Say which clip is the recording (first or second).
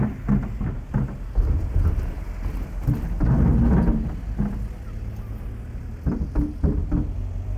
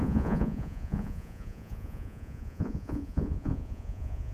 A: first